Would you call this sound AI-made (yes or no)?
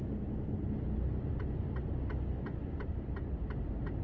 no